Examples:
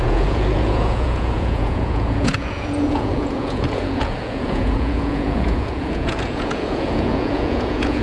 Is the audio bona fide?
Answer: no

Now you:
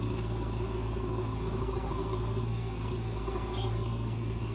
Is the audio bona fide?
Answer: no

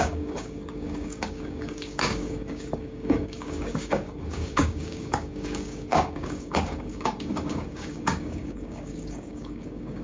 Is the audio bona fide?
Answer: no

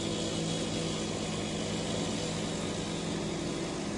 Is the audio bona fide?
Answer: yes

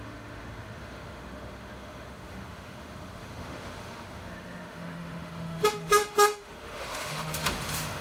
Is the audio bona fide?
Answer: no